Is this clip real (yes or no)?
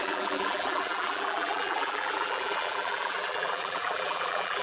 no